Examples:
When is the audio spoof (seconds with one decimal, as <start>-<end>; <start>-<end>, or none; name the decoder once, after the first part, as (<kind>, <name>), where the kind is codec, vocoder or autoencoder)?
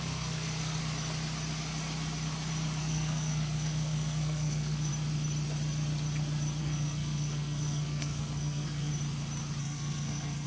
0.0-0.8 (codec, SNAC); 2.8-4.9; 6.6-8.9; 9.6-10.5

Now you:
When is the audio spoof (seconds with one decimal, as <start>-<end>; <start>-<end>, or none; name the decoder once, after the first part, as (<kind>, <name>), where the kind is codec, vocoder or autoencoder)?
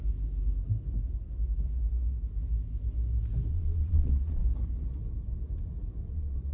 3.5-4.4 (vocoder, Vocos); 6.1-6.5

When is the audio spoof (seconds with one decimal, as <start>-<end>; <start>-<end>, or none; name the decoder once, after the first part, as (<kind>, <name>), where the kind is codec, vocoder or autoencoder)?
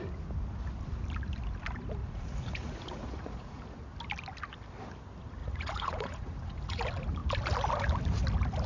2.0-3.6 (vocoder, Vocos); 5.4-6.8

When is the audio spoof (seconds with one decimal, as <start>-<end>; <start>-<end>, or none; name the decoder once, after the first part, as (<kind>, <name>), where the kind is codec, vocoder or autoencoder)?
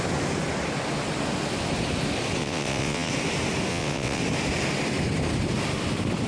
2.4-3.1 (vocoder, WaveNeXt); 3.7-4.2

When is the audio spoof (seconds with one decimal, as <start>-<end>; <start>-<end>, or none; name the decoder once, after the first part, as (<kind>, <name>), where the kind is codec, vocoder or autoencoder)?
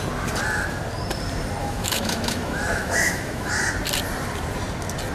1.6-3.5 (autoencoder, DAC-VAE)